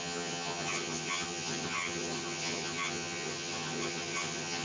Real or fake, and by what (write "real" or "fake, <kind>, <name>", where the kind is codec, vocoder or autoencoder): fake, vocoder, HiFi-GAN